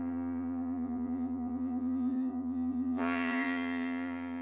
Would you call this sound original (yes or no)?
no